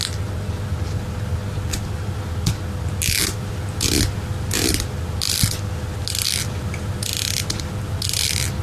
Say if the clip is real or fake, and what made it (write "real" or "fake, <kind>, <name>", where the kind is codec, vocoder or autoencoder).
real